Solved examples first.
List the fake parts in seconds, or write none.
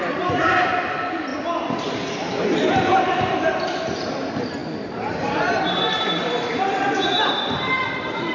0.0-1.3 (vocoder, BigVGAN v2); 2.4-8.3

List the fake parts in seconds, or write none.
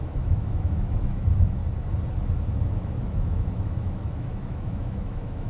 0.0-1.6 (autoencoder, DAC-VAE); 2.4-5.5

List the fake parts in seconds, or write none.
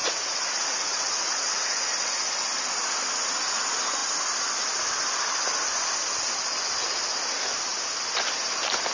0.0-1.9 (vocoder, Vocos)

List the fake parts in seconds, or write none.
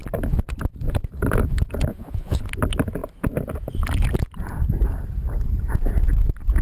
1.9-2.4 (vocoder, Vocos)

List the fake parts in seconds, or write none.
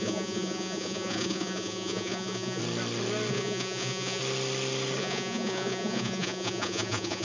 0.0-2.6 (vocoder, Vocos); 3.3-4.2; 5.0-7.2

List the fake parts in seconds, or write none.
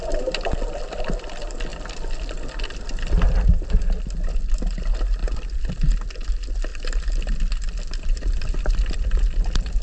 none